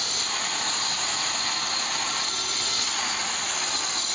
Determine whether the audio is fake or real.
real